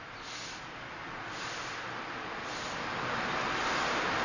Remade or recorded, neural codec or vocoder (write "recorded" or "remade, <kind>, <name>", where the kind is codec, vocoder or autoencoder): recorded